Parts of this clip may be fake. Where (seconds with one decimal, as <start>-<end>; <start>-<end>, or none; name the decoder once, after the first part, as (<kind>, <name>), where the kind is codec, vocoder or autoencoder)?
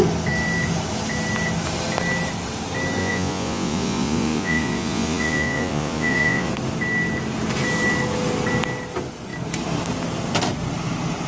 3.0-6.5 (vocoder, Vocos)